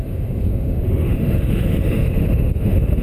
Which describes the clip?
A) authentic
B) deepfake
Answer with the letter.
B